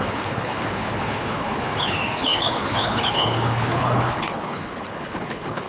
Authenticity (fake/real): fake